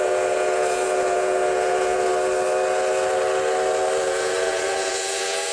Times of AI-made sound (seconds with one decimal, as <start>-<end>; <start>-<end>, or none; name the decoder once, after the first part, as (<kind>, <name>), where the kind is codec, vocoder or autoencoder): 0.0-2.1 (vocoder, Vocos); 4.0-5.5